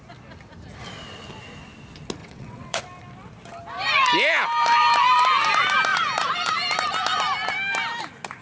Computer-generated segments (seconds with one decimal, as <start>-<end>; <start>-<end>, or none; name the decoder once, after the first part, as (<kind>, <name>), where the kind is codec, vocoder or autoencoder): 2.2-2.8 (vocoder, WaveNeXt)